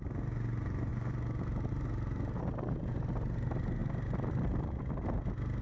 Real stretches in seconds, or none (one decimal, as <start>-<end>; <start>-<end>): 0.0-3.8; 4.8-5.6